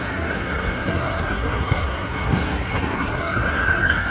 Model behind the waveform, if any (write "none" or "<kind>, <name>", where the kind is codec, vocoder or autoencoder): codec, SNAC